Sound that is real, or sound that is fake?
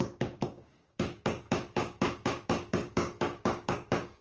fake